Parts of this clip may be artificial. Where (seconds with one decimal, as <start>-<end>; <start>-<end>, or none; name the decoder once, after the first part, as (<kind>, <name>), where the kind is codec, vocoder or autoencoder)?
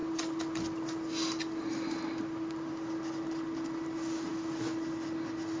none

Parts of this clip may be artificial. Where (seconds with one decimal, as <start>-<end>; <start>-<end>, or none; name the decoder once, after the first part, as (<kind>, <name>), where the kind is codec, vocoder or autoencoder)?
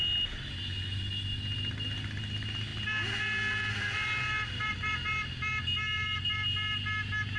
none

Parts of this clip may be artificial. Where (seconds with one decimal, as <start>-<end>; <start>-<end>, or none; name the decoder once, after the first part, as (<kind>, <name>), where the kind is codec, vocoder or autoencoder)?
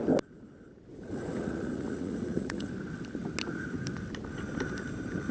0.9-2.7 (vocoder, Vocos)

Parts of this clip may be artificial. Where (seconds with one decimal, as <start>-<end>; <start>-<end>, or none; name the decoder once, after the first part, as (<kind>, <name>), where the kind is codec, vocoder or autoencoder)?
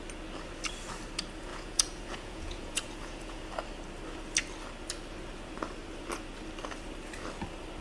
1.5-3.4 (vocoder, Vocos)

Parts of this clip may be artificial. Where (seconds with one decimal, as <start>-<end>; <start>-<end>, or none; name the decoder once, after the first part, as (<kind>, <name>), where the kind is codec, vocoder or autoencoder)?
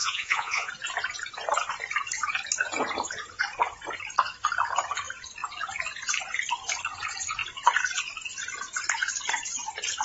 0.0-0.7 (vocoder, Vocos)